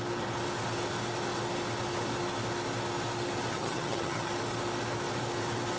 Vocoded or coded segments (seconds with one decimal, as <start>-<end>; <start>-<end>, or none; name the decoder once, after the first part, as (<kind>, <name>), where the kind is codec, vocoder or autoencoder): 3.5-4.3 (vocoder, HiFi-GAN)